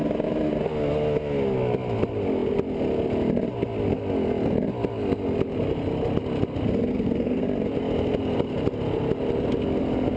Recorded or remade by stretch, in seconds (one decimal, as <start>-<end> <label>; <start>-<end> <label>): 0.0-6.9 recorded; 6.9-7.4 remade; 7.4-10.2 recorded